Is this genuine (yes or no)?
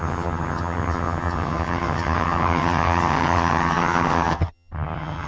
no